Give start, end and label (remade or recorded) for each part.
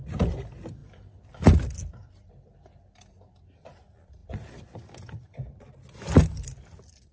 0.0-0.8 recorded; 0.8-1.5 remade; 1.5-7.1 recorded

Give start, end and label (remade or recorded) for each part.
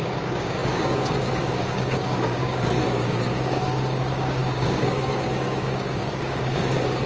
0.0-7.1 remade